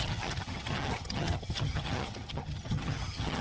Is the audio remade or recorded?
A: remade